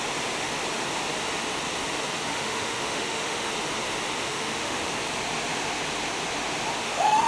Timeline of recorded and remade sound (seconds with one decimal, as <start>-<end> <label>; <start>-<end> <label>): 0.0-2.3 recorded; 2.3-3.5 remade; 3.5-4.2 recorded; 4.2-4.9 remade; 4.9-6.8 recorded; 6.8-7.3 remade